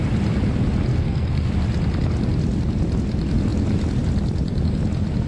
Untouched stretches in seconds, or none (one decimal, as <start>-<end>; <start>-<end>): 0.0-0.9; 1.5-5.3